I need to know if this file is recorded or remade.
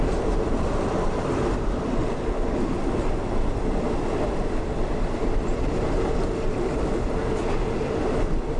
recorded